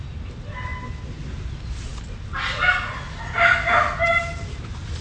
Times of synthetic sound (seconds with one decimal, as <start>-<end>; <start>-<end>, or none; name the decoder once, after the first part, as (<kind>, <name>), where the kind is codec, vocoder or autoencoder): none